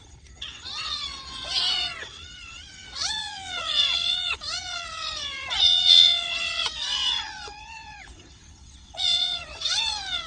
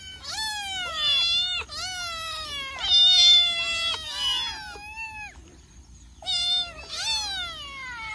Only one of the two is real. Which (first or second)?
second